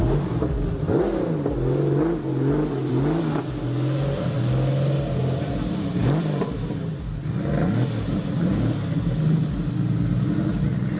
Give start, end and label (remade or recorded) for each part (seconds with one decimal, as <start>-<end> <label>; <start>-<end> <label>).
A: 0.0-11.0 recorded